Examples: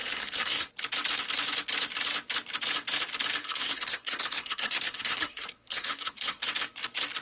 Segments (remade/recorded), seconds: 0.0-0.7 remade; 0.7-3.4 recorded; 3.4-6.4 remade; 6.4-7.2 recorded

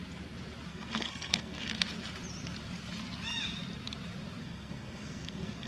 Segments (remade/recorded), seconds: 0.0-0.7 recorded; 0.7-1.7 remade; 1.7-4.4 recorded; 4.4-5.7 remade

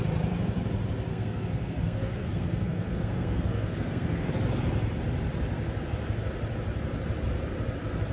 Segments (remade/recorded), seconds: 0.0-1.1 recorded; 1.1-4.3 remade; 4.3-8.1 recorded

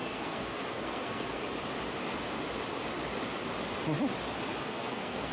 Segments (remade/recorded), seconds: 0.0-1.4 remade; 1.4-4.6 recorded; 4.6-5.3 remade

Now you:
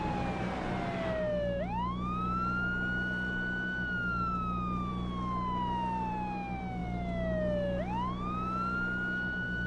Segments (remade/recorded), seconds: 0.0-9.7 recorded